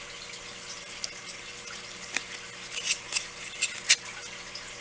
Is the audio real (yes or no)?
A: yes